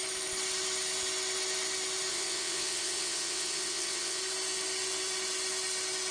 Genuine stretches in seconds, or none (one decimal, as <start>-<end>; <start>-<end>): 0.0-2.1; 4.2-6.1